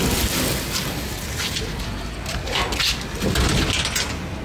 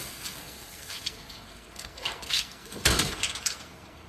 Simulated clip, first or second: second